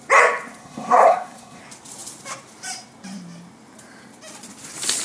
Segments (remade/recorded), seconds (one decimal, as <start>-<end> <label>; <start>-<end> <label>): 0.0-0.6 recorded; 0.6-1.6 remade; 1.6-5.0 recorded